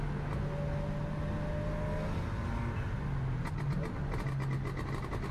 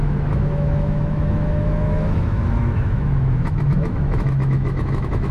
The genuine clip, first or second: first